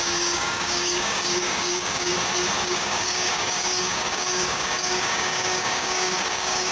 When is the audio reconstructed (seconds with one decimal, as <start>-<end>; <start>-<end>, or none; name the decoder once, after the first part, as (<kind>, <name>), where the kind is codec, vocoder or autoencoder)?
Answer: 0.0-2.1 (codec, DAC); 2.6-6.7